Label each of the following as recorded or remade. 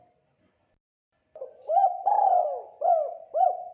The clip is recorded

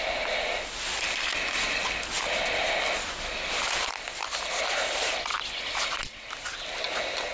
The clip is recorded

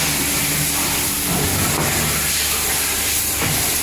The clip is recorded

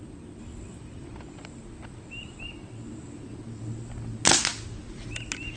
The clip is recorded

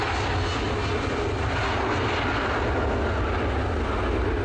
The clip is recorded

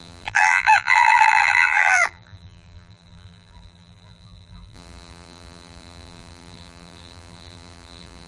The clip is remade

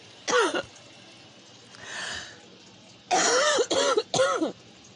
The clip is recorded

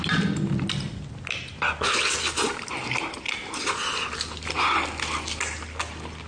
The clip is recorded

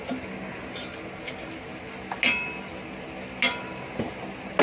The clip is recorded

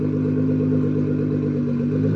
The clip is recorded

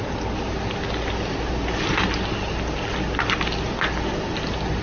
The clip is recorded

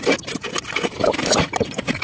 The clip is recorded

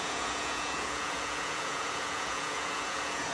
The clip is remade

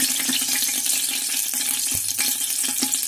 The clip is recorded